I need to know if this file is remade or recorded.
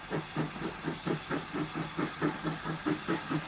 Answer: recorded